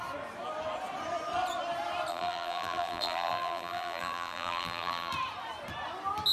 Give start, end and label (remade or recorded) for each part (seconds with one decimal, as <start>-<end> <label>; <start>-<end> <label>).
0.0-2.1 recorded; 2.1-5.1 remade; 5.1-6.3 recorded